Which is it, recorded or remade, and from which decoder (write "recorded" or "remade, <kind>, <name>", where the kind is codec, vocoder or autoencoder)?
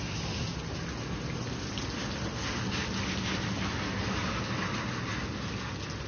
recorded